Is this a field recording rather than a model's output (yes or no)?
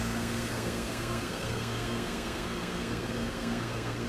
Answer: no